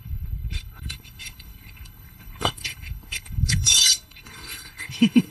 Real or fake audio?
fake